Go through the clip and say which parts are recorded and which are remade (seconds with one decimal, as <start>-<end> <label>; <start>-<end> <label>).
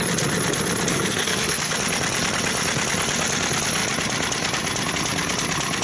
0.0-0.9 recorded; 0.9-1.7 remade; 1.7-5.8 recorded